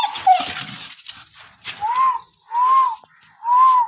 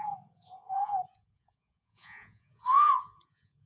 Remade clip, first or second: second